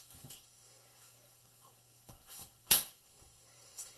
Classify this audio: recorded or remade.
remade